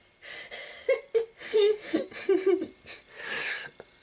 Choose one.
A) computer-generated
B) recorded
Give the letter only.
B